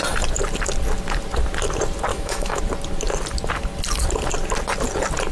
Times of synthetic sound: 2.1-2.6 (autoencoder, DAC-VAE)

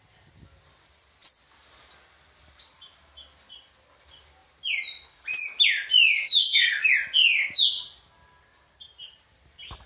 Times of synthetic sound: 6.4-6.9 (codec, SNAC)